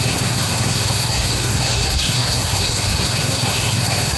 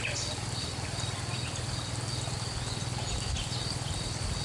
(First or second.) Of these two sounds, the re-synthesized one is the first